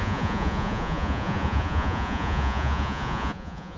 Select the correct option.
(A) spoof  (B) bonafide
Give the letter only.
A